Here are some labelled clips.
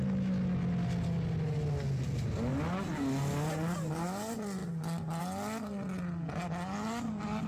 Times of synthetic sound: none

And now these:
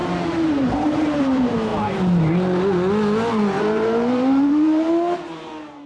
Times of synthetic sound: 0.0-1.7 (vocoder, BigVGAN v2); 3.6-5.9

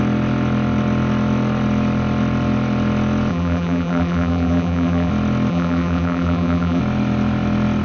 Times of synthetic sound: 3.3-5.1 (vocoder, BigVGAN v2); 5.5-6.8

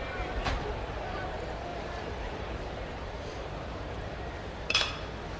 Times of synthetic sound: 1.7-4.9 (vocoder, BigVGAN v2)

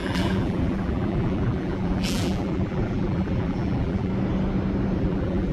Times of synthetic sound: 0.0-4.1 (vocoder, BigVGAN v2); 5.0-5.5

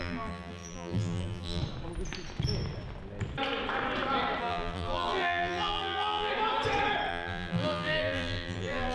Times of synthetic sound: 0.0-1.6 (vocoder, BigVGAN v2); 4.4-6.3; 7.1-8.9

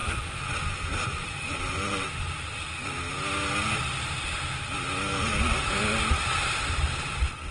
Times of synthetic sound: 0.0-2.6 (vocoder, BigVGAN v2)

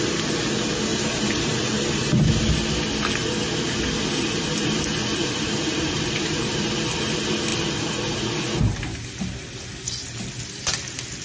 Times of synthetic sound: 0.9-2.4 (vocoder, BigVGAN v2); 5.2-6.7; 7.5-8.4